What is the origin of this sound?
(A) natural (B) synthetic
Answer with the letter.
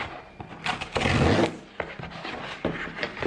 A